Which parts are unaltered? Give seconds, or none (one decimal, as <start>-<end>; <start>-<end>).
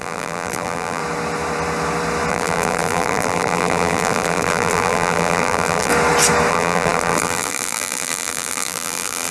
1.0-2.3; 5.9-6.5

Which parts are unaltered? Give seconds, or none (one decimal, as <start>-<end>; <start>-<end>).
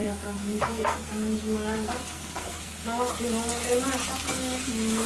3.1-4.2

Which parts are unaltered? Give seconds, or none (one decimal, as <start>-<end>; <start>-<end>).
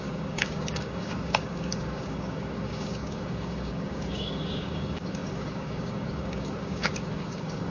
none